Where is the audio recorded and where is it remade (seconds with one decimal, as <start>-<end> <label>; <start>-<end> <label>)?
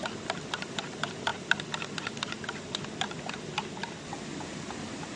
0.0-5.2 recorded